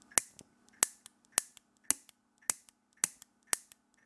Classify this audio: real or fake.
real